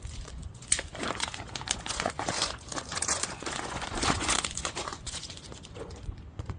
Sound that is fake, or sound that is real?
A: fake